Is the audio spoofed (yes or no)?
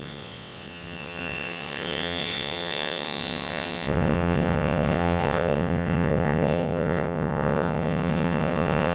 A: yes